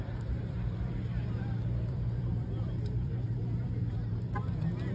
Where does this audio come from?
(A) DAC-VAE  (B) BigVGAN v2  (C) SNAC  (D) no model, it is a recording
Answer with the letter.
B